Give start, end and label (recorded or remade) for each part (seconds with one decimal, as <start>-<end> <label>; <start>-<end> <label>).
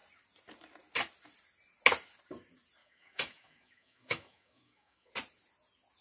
0.0-2.8 recorded; 2.8-5.1 remade; 5.1-6.0 recorded